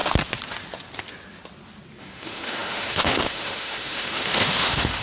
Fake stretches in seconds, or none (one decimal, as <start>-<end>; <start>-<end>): 2.0-5.0